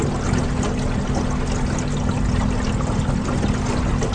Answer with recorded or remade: recorded